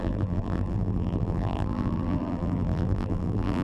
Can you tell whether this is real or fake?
fake